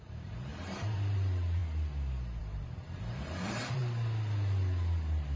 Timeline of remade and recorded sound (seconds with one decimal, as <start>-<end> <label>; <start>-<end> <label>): 0.0-1.6 remade; 1.6-2.4 recorded; 2.4-3.8 remade; 3.8-5.4 recorded